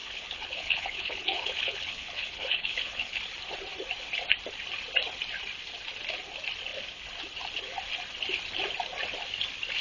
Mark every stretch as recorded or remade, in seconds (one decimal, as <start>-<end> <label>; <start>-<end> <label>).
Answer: 0.0-3.2 remade; 3.2-9.8 recorded